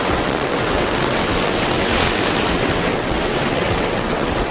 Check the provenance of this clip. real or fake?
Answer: fake